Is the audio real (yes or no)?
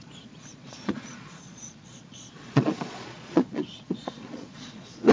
no